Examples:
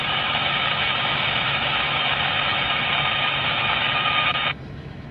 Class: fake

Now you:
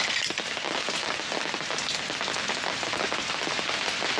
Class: real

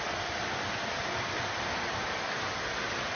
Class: real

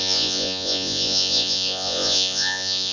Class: fake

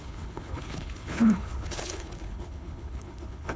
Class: fake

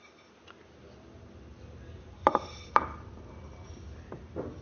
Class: real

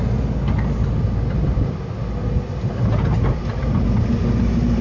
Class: real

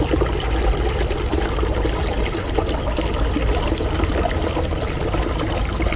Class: real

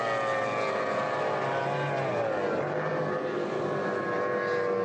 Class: real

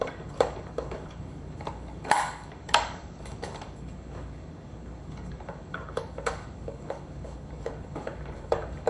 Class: fake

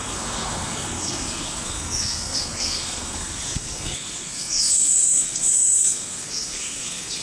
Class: fake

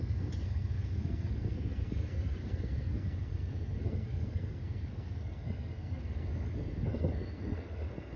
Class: fake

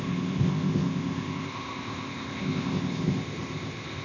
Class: fake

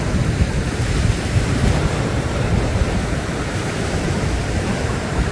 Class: fake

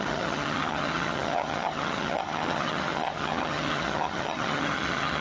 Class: fake